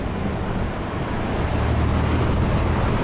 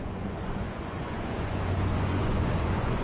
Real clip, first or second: first